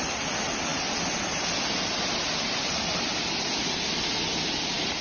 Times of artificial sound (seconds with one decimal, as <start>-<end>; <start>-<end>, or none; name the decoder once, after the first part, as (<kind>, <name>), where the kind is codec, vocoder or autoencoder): none